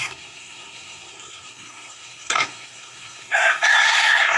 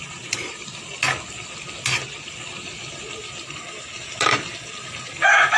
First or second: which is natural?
second